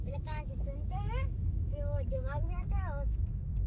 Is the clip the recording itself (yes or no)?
no